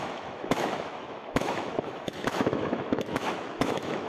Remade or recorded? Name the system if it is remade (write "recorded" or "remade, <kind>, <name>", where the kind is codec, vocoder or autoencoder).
remade, autoencoder, DAC-VAE